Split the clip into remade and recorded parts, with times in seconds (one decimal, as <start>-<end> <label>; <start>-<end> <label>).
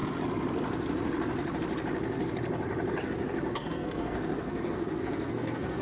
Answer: 0.0-3.5 recorded; 3.5-5.8 remade